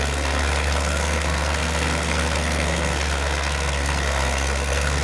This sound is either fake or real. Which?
fake